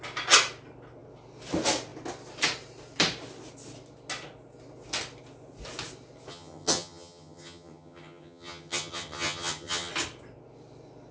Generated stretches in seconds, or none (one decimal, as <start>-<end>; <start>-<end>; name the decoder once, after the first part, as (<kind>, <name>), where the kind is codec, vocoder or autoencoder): 6.3-9.9 (vocoder, HiFi-GAN)